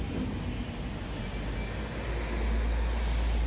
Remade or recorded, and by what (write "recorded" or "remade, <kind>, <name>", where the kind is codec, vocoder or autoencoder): recorded